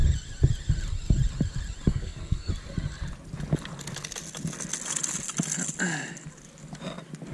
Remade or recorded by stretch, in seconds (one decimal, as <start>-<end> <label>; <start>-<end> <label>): 0.0-1.9 recorded; 1.9-2.5 remade; 2.5-7.3 recorded